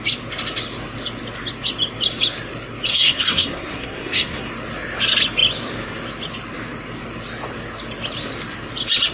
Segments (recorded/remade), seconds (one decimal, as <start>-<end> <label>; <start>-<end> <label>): 0.0-2.9 recorded; 2.9-4.5 remade; 4.5-9.1 recorded